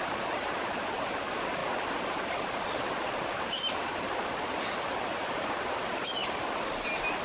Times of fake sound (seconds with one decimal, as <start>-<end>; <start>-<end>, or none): none